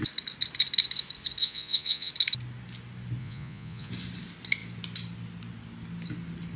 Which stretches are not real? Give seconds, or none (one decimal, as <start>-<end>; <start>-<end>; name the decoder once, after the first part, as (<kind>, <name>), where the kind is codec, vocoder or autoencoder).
1.4-2.1 (vocoder, Vocos); 3.2-3.9